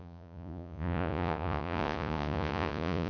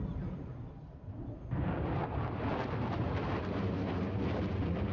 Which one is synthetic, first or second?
first